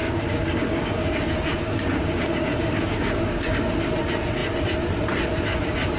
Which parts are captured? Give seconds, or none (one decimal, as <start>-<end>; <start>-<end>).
3.6-6.0